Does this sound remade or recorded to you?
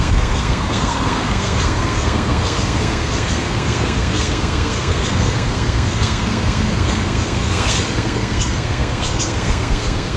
remade